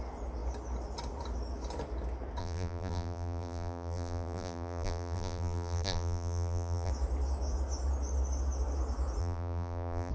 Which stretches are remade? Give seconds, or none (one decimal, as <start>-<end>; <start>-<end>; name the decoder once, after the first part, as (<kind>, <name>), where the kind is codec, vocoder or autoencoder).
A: 2.4-6.9 (vocoder, BigVGAN v2); 9.2-10.1